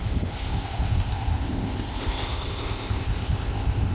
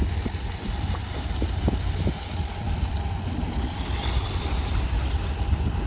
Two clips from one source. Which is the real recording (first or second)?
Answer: second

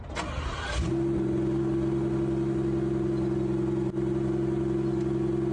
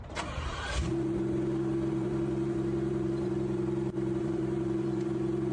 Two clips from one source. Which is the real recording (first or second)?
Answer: first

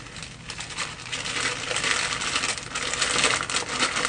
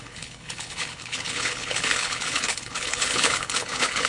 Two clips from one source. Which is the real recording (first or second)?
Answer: first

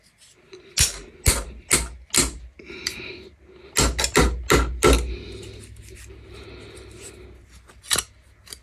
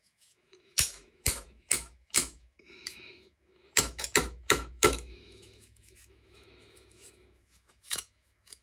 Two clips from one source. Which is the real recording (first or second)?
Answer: first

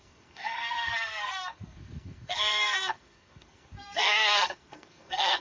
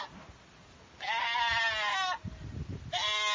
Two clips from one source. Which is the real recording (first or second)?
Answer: second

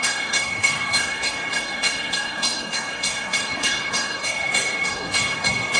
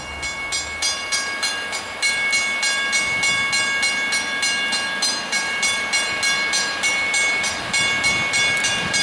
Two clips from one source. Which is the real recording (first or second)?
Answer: second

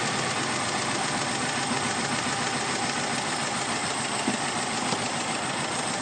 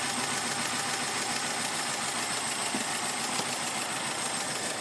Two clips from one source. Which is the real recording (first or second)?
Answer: second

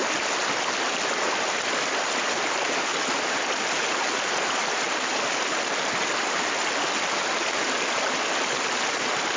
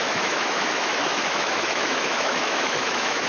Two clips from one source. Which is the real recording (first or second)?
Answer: first